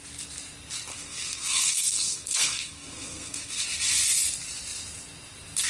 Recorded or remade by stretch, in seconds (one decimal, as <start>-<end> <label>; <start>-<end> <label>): 0.0-0.9 recorded; 0.9-3.6 remade; 3.6-5.7 recorded